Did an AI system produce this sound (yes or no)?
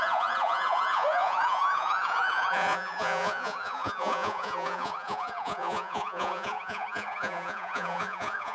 yes